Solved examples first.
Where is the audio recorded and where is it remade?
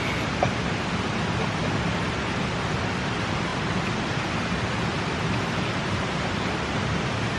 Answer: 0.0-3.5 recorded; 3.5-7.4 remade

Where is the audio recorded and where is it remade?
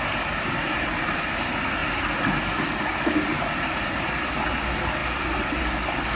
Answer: 0.0-6.2 recorded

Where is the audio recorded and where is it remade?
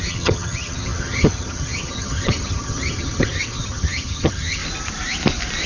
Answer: 0.0-4.6 remade; 4.6-5.7 recorded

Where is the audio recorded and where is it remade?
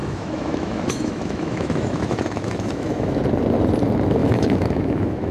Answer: 0.0-3.2 remade; 3.2-4.2 recorded; 4.2-5.3 remade